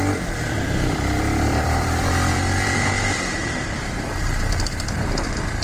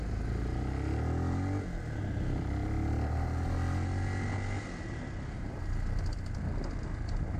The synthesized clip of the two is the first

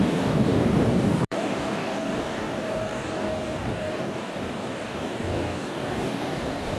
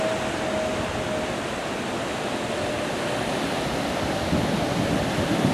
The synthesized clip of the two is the first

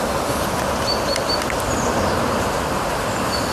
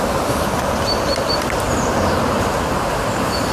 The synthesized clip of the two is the second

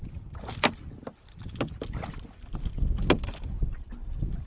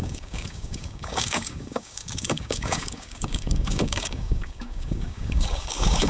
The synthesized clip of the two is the second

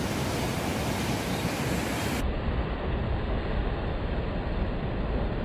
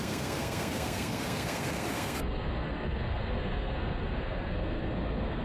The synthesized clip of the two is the second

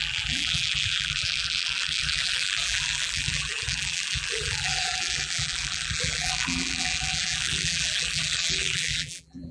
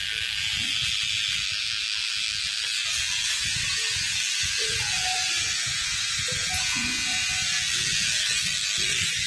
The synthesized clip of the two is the first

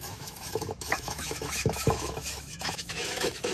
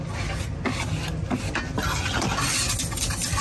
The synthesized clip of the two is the first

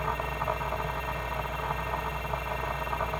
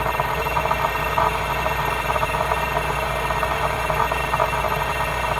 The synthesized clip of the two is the second